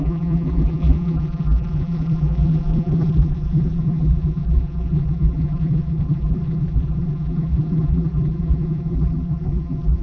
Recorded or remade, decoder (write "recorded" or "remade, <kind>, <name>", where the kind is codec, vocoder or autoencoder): remade, vocoder, BigVGAN v2